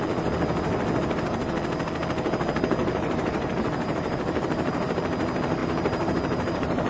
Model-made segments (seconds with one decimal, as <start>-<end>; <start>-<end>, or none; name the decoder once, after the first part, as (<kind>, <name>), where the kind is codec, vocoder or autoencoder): 2.8-5.0 (vocoder, BigVGAN v2); 5.6-6.9